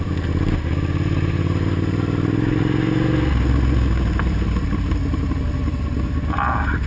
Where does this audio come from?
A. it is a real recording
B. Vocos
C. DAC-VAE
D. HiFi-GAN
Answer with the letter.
A